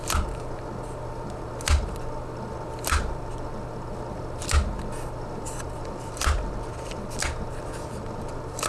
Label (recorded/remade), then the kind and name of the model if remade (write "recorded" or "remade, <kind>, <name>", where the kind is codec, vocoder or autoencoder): recorded